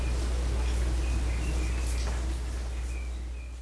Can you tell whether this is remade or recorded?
recorded